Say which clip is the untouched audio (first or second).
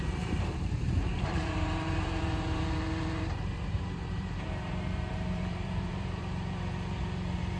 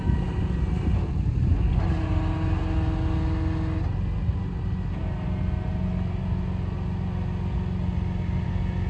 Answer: second